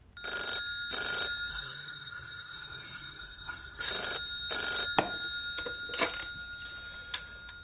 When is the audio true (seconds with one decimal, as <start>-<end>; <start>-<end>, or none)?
0.0-1.5; 3.9-7.6